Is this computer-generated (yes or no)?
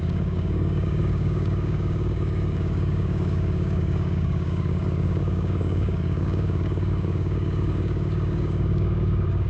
yes